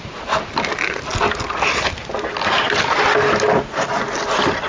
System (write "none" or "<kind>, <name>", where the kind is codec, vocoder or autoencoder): none